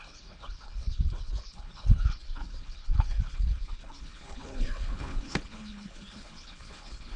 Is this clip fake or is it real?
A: fake